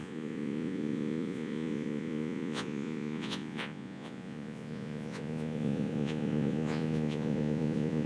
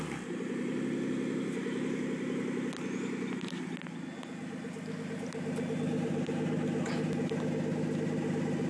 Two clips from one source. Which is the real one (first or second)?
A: second